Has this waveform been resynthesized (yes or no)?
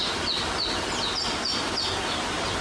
no